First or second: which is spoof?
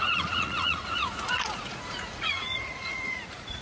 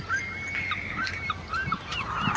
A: first